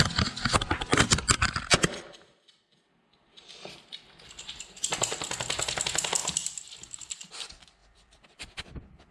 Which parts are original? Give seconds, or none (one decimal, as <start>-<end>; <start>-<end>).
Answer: 0.0-7.8